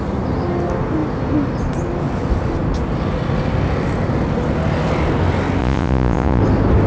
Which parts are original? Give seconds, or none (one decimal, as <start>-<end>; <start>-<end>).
0.0-5.6; 6.4-6.9